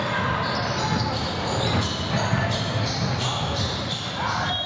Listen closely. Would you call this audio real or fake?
real